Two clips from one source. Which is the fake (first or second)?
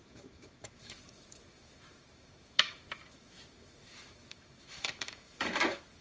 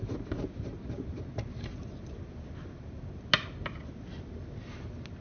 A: first